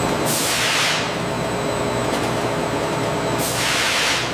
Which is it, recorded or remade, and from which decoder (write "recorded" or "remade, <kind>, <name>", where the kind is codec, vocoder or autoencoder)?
recorded